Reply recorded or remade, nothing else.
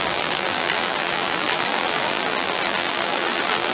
remade